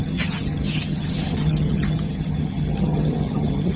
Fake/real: fake